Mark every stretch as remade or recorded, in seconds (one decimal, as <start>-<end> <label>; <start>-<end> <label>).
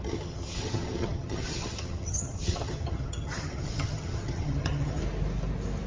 0.0-5.0 remade; 5.0-5.9 recorded